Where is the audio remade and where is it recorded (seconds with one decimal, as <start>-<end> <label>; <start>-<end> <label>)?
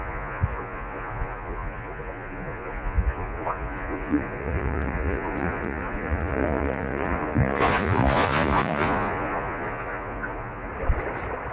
0.0-10.7 remade; 10.7-11.5 recorded